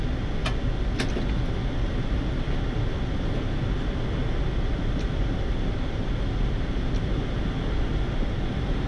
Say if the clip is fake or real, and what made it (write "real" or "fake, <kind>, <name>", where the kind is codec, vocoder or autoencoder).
real